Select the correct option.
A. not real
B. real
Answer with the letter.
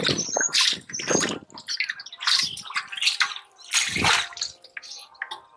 B